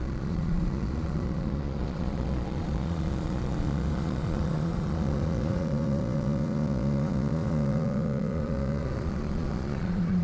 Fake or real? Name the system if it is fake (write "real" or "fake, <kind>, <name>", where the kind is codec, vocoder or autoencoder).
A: fake, vocoder, Vocos